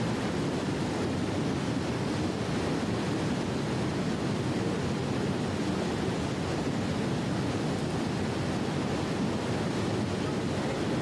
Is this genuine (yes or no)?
yes